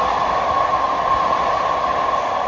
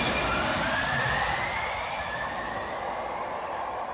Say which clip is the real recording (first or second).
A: first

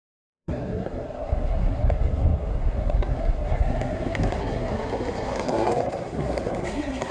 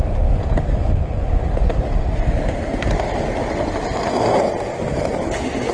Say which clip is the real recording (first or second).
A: second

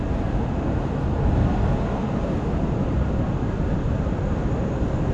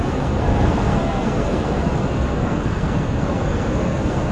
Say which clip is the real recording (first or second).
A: first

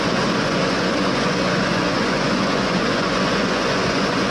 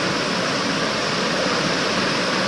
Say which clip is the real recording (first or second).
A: second